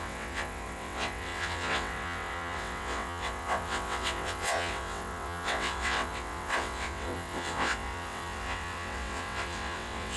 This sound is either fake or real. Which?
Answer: fake